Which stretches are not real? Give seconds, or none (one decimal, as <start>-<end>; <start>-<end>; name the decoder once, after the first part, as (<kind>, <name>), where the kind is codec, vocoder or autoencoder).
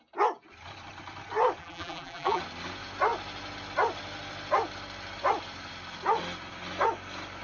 1.6-2.4 (vocoder, BigVGAN v2)